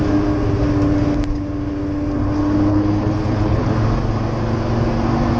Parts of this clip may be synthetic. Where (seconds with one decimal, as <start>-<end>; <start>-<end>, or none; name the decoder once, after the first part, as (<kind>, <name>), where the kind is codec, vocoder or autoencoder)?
2.7-3.7 (codec, HILCodec)